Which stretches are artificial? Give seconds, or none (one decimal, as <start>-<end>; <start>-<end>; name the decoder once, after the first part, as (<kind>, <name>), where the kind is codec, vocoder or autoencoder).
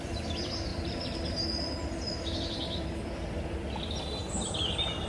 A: none